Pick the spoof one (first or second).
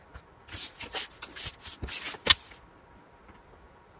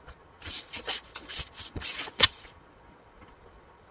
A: second